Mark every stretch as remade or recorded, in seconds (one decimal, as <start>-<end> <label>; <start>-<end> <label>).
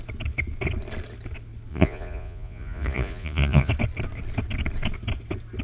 0.0-1.7 recorded; 1.7-3.7 remade; 3.7-5.6 recorded